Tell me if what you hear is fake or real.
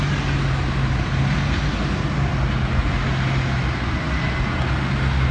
real